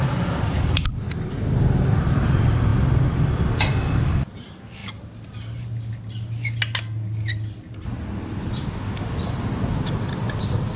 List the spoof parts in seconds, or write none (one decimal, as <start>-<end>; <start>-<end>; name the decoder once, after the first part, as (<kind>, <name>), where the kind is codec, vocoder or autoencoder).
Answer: 0.0-4.8 (vocoder, BigVGAN v2); 8.4-10.8